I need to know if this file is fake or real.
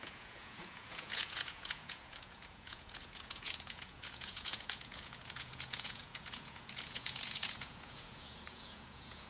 fake